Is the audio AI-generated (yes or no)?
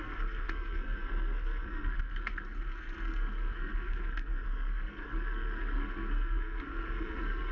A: yes